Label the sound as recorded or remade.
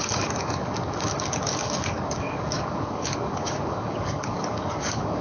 remade